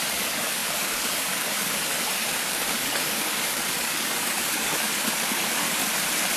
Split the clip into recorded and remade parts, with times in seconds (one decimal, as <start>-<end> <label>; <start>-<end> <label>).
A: 0.0-5.8 remade; 5.8-6.4 recorded